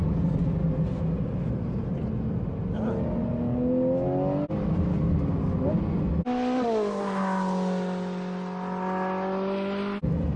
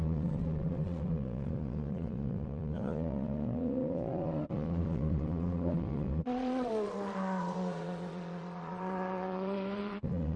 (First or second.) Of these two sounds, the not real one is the second